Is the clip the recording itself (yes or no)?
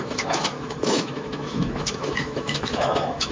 no